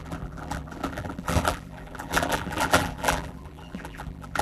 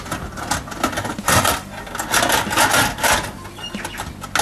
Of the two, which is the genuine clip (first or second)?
second